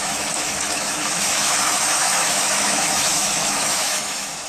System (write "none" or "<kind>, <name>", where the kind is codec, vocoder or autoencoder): autoencoder, DAC-VAE